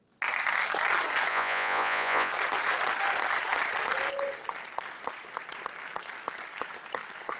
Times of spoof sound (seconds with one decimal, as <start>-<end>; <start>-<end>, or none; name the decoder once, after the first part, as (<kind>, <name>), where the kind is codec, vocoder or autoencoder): 1.3-2.3 (vocoder, Vocos)